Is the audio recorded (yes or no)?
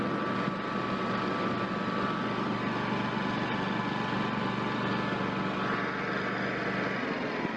yes